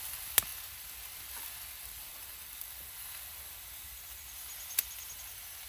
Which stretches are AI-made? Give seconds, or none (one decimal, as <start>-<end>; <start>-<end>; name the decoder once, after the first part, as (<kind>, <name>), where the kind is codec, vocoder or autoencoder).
none